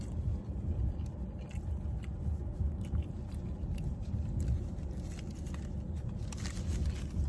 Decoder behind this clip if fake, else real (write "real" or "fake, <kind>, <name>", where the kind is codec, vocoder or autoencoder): real